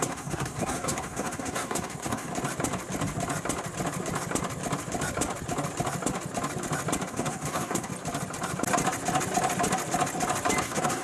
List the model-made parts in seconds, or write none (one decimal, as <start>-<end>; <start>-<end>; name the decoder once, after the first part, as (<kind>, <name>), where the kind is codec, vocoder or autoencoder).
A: 0.0-2.3 (codec, SNAC); 7.1-7.9; 10.6-11.0